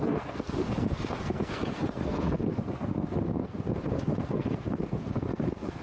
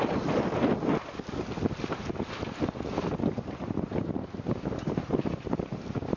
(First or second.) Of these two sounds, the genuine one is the second